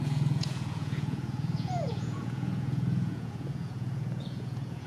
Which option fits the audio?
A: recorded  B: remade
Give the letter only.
B